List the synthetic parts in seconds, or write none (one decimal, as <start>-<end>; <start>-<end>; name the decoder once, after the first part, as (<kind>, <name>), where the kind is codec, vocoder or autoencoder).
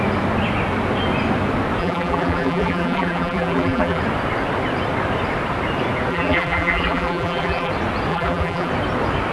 1.8-4.0 (vocoder, BigVGAN v2); 6.1-7.7; 8.1-8.7